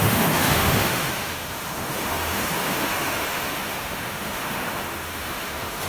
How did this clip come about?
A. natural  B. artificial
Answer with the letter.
B